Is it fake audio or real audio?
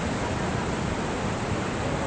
real